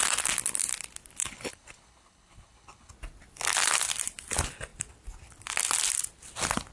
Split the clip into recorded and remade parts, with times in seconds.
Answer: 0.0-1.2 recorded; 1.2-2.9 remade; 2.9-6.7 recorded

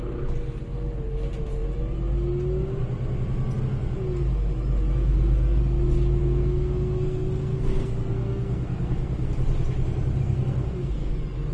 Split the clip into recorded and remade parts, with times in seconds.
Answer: 0.0-4.9 recorded; 4.9-5.6 remade; 5.6-6.2 recorded; 6.2-9.3 remade; 9.3-10.2 recorded; 10.2-11.1 remade; 11.1-11.5 recorded

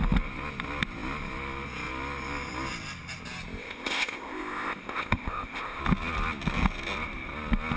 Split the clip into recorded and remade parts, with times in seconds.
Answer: 0.0-3.6 recorded; 3.6-5.8 remade; 5.8-7.8 recorded

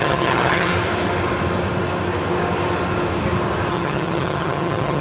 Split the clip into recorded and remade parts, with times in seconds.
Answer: 0.0-0.7 remade; 0.7-3.7 recorded; 3.7-5.0 remade

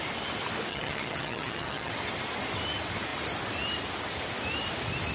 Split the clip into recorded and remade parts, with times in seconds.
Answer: 0.0-0.7 recorded; 0.7-1.9 remade; 1.9-5.1 recorded

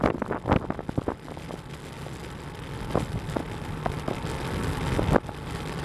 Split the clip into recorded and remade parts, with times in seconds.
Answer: 0.0-5.8 recorded